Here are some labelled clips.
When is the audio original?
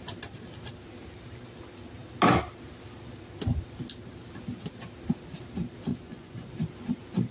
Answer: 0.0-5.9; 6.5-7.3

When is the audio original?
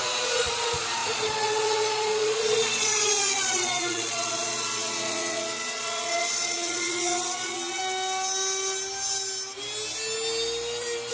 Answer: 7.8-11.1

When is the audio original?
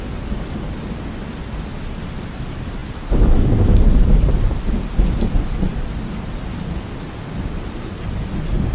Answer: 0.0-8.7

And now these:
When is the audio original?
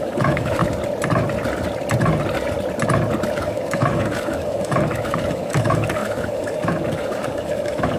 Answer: 0.6-3.4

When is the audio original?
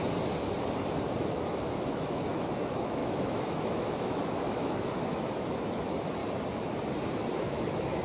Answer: 0.0-1.3; 6.2-7.4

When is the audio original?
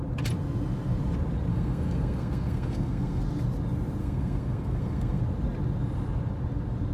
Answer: 0.0-1.5; 3.2-4.0; 5.2-6.9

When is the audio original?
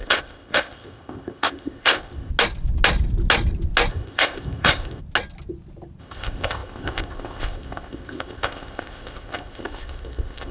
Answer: 2.3-3.9; 5.0-6.0